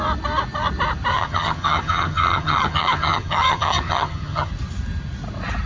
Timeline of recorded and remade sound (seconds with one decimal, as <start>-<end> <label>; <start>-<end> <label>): 0.0-1.1 recorded; 1.1-4.5 remade; 4.5-5.7 recorded